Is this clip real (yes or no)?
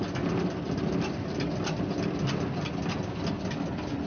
yes